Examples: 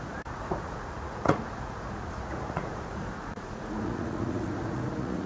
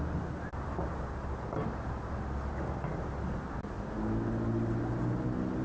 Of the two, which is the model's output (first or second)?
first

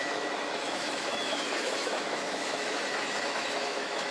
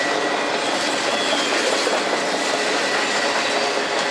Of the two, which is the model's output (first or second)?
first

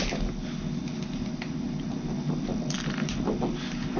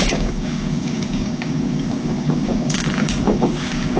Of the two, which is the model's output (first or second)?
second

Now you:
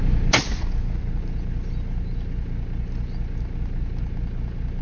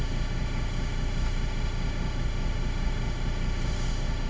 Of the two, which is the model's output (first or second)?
second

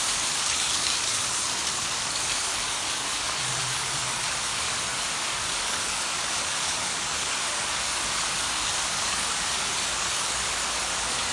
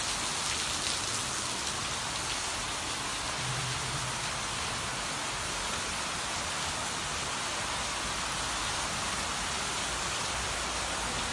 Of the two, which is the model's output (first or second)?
first